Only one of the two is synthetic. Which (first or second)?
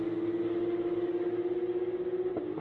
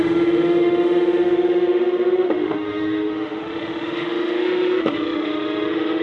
second